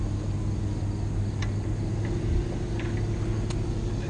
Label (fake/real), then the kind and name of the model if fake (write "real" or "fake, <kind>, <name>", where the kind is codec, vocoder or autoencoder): real